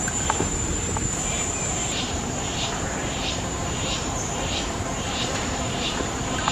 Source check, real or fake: fake